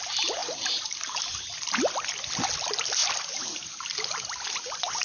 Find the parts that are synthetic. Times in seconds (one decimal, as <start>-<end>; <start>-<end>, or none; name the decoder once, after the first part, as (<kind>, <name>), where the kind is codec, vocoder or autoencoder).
0.4-1.0 (vocoder, BigVGAN v2)